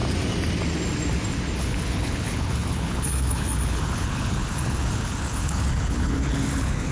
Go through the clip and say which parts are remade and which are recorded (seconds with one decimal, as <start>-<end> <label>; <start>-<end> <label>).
0.0-1.6 recorded; 1.6-6.9 remade

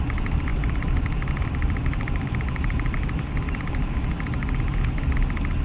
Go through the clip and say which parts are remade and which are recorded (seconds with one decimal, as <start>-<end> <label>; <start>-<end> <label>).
0.0-0.5 recorded; 0.5-3.9 remade; 3.9-5.6 recorded

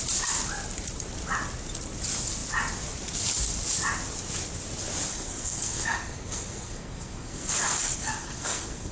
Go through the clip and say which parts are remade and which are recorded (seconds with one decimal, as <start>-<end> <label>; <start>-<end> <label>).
0.0-5.1 recorded; 5.1-8.9 remade

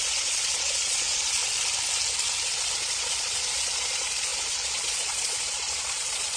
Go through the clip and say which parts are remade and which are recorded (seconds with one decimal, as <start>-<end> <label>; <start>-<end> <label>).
0.0-1.4 remade; 1.4-2.5 recorded; 2.5-6.4 remade

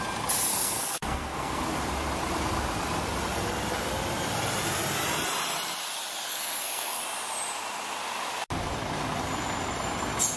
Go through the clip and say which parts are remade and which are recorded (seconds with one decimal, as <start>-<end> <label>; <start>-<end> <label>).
0.0-0.5 recorded; 0.5-1.6 remade; 1.6-6.3 recorded; 6.3-7.0 remade; 7.0-10.4 recorded